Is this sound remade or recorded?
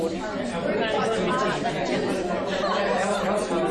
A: recorded